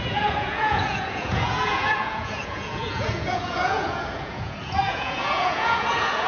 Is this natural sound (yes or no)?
no